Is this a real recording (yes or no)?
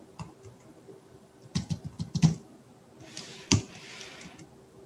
no